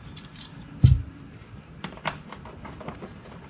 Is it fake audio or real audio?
fake